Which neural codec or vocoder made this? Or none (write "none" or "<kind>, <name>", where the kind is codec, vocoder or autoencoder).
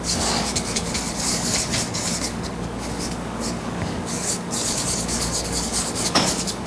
codec, DAC